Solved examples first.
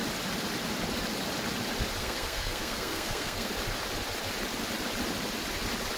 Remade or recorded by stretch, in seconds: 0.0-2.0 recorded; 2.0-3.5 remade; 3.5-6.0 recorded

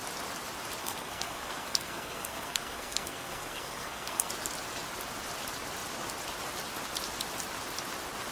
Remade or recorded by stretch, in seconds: 0.0-0.8 recorded; 0.8-4.3 remade; 4.3-8.3 recorded

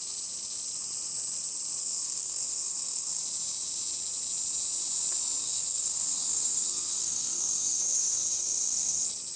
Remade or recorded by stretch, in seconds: 0.0-1.8 recorded; 1.8-3.2 remade; 3.2-5.4 recorded; 5.4-9.0 remade; 9.0-9.4 recorded

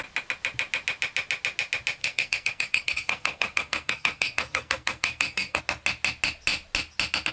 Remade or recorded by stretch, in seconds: 0.0-2.0 recorded; 2.0-5.6 remade; 5.6-7.3 recorded

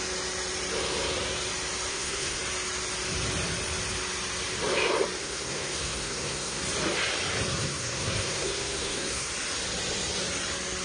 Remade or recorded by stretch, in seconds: 0.0-1.9 recorded; 1.9-2.4 remade; 2.4-5.2 recorded; 5.2-6.6 remade; 6.6-7.5 recorded; 7.5-9.3 remade; 9.3-10.8 recorded

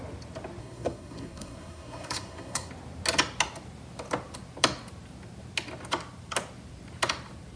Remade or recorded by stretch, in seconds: 0.0-0.6 recorded; 0.6-2.7 remade; 2.7-7.6 recorded